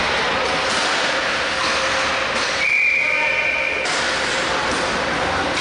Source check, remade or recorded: recorded